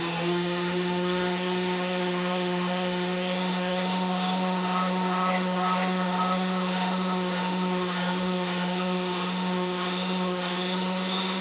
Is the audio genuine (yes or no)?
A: no